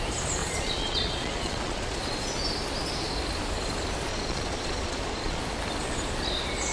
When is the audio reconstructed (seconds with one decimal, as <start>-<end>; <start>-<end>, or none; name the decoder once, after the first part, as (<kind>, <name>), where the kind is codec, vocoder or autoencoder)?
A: 0.4-2.0 (vocoder, Vocos); 4.1-5.4